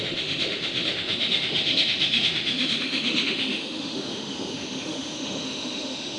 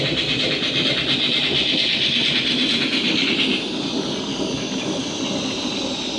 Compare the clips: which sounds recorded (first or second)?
second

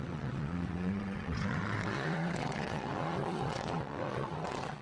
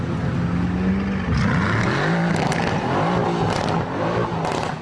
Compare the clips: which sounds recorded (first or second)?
second